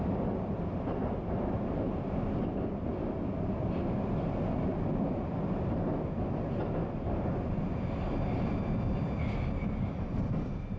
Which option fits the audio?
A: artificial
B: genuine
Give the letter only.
B